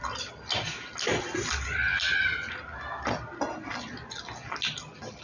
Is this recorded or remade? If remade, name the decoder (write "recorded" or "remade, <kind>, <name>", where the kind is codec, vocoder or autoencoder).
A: recorded